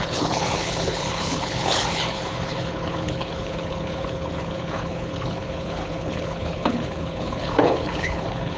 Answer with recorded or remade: remade